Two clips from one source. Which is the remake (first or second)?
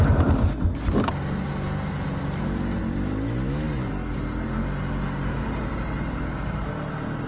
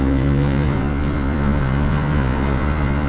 second